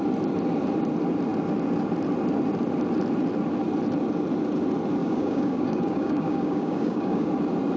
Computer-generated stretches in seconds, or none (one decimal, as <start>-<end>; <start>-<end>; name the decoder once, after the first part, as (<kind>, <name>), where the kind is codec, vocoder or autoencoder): 5.0-7.3 (codec, DAC)